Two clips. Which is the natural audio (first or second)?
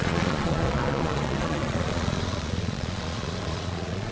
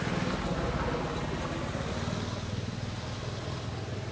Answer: second